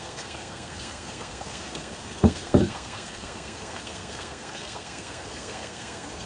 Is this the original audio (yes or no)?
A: no